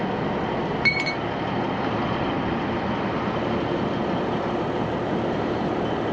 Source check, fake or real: real